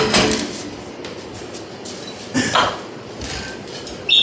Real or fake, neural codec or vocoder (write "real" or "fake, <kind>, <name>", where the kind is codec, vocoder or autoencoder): real